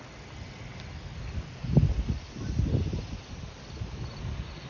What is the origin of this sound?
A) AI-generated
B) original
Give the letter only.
B